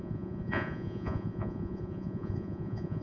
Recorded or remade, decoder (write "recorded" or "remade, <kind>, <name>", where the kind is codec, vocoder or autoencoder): remade, vocoder, Vocos